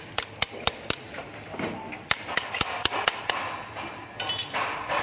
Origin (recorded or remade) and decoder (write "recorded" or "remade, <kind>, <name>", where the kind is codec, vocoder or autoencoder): recorded